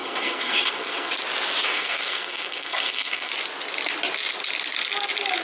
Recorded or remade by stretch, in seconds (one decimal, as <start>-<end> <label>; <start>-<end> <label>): 0.0-1.1 remade; 1.1-1.6 recorded; 1.6-3.3 remade; 3.3-5.4 recorded